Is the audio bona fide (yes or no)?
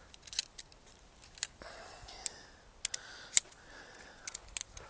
yes